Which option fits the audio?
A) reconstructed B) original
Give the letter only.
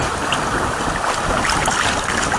B